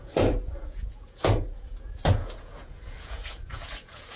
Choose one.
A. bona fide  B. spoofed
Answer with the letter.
B